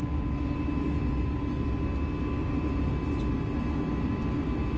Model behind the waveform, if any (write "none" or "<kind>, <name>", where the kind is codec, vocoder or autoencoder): none